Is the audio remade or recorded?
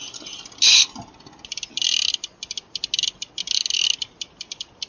recorded